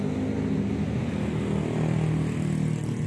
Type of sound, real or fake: real